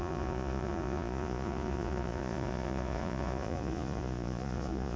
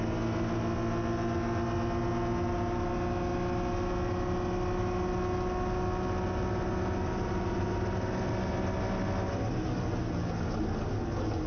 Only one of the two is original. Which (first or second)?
second